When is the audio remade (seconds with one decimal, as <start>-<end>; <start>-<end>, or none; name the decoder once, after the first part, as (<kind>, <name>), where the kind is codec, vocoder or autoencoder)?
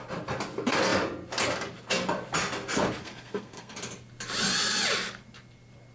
3.0-3.8 (codec, SNAC)